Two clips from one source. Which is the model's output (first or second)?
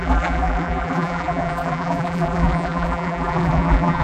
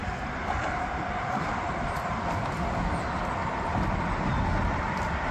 first